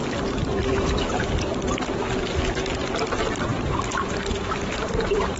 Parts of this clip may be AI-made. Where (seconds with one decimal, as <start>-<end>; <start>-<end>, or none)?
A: 1.1-2.0; 3.5-4.3